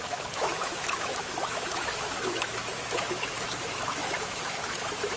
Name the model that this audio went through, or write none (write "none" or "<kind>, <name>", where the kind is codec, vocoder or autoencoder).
autoencoder, DAC-VAE